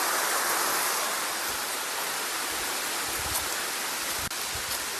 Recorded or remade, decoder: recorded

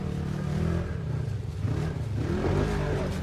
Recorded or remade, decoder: recorded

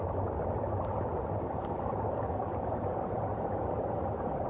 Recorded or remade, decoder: recorded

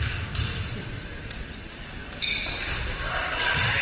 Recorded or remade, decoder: remade, vocoder, BigVGAN v2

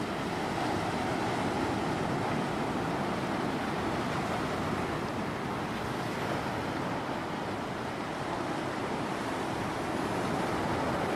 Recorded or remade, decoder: recorded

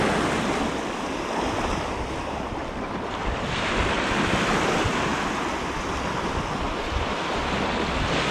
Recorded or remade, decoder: recorded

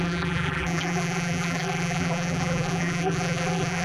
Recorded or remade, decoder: remade, vocoder, BigVGAN v2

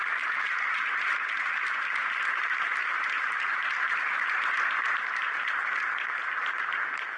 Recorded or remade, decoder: recorded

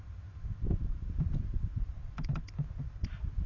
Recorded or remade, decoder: remade, vocoder, BigVGAN v2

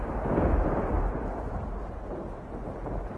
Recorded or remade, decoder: recorded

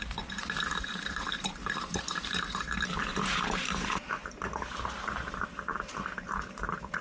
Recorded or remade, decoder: remade, vocoder, BigVGAN v2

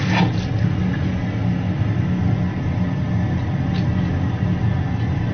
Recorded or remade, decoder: recorded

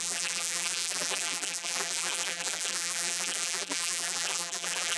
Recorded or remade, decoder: remade, vocoder, BigVGAN v2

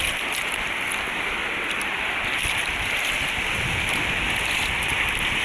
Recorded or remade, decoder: recorded